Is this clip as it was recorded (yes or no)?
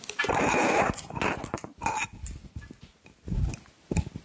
yes